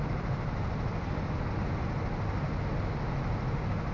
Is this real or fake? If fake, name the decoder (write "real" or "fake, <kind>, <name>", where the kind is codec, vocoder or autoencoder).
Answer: real